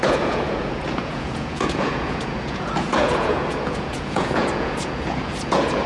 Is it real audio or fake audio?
fake